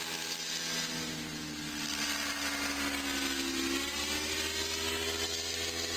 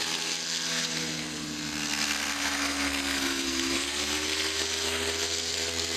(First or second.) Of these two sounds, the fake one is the second